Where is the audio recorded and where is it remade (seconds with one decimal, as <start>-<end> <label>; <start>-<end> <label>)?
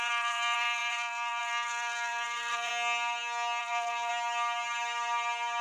0.0-2.7 remade; 2.7-3.6 recorded; 3.6-4.1 remade; 4.1-5.6 recorded